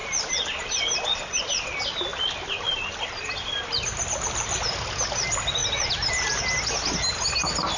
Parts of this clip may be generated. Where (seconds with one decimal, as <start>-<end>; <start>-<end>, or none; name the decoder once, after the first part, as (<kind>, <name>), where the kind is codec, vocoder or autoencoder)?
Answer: none